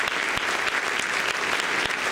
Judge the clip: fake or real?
real